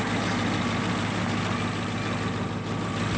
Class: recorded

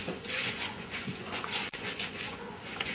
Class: remade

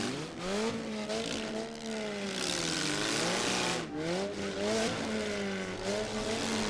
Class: recorded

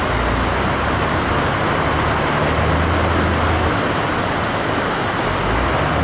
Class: recorded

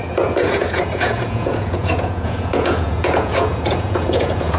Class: remade